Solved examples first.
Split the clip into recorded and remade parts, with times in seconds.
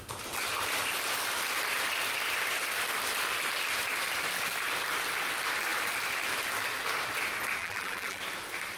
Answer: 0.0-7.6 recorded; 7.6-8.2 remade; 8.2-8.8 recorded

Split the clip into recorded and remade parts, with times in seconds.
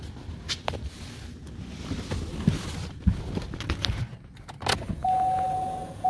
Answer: 0.0-5.0 recorded; 5.0-6.1 remade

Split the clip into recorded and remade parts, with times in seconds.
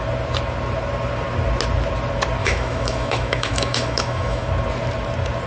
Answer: 0.0-2.4 recorded; 2.4-4.5 remade; 4.5-5.5 recorded